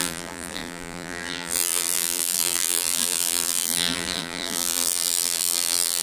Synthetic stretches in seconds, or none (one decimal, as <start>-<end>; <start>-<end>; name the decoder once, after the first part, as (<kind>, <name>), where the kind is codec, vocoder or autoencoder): 0.0-6.0 (vocoder, BigVGAN v2)